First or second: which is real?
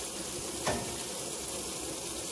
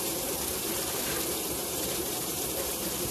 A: first